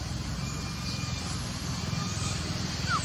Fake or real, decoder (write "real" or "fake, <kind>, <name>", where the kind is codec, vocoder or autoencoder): real